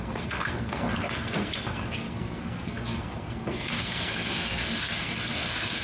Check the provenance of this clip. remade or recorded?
remade